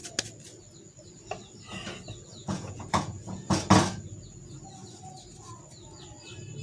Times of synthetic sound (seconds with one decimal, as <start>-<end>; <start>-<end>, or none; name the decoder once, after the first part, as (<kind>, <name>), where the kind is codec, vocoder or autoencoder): 2.4-3.6 (vocoder, Vocos)